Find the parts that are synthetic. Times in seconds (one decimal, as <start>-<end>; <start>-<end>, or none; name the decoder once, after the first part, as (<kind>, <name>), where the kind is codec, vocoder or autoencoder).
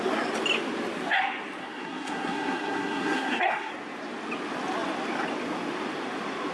1.6-3.7 (codec, SNAC)